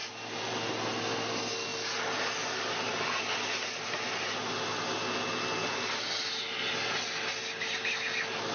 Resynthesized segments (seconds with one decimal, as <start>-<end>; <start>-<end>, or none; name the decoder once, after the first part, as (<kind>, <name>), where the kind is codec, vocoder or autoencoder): none